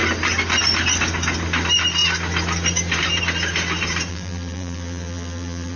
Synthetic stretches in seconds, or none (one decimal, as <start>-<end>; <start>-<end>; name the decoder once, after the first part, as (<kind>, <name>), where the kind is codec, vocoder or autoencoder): 4.1-5.8 (vocoder, BigVGAN v2)